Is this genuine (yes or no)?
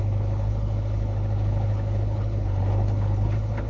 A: no